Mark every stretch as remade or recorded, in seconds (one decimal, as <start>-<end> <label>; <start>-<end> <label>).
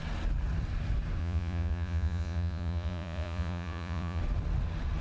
0.0-1.2 recorded; 1.2-4.2 remade; 4.2-5.0 recorded